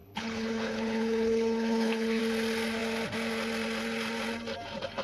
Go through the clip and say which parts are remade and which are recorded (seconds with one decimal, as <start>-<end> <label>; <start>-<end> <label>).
0.0-2.2 remade; 2.2-5.0 recorded